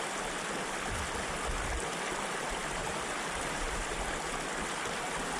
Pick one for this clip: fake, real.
real